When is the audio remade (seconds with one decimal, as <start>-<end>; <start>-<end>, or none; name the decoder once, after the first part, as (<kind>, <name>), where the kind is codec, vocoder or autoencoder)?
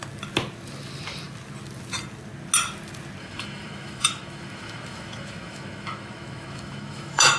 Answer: 3.2-7.4 (autoencoder, DAC-VAE)